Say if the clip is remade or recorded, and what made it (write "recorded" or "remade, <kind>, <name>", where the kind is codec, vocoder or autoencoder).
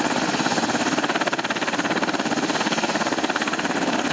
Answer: recorded